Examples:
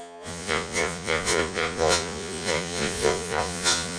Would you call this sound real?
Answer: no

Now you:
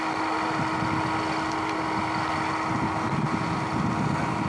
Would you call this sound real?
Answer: yes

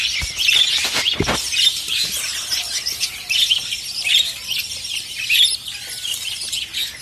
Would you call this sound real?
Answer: yes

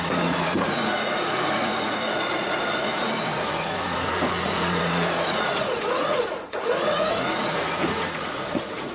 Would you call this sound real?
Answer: no